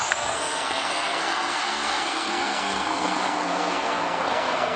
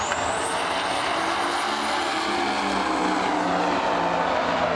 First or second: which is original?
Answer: second